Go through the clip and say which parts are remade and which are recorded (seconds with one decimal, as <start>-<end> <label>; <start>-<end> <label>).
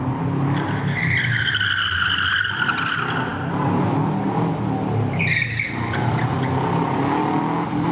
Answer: 0.0-7.9 recorded